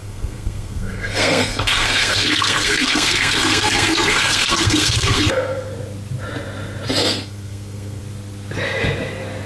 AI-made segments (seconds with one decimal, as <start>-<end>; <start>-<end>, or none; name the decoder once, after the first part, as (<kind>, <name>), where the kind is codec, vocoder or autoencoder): 0.0-5.7 (codec, SNAC); 7.0-8.0